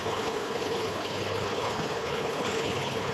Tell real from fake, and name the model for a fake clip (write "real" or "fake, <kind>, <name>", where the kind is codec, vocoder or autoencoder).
fake, codec, HILCodec